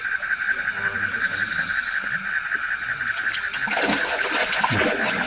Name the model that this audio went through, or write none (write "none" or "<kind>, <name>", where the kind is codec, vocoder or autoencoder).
none